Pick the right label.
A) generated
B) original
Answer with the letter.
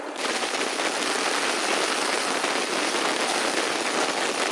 B